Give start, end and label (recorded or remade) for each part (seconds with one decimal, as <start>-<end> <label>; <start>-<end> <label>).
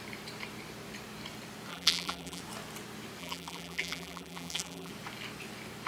0.0-1.7 recorded; 1.7-2.4 remade; 2.4-3.2 recorded; 3.2-4.9 remade; 4.9-5.9 recorded